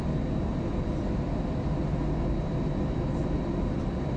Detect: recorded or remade recorded